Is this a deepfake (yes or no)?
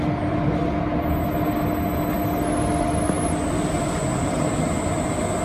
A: no